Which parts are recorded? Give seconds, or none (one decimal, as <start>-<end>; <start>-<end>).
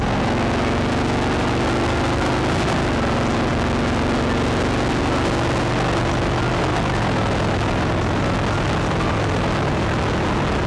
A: 0.0-10.7